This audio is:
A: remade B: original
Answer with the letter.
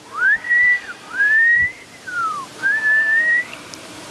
A